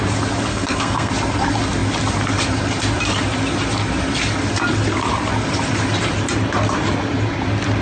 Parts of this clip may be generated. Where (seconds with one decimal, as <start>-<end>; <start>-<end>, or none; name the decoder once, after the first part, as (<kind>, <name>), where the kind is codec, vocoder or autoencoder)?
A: 0.5-1.1 (codec, SNAC)